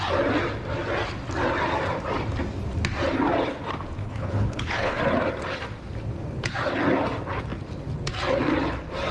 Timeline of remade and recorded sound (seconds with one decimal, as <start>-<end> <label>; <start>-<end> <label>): 0.0-4.0 recorded; 4.0-5.0 remade; 5.0-9.1 recorded